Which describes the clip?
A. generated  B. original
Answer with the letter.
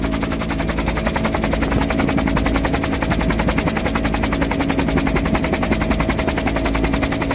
B